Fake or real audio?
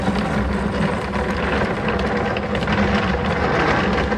real